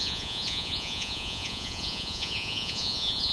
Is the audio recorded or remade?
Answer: remade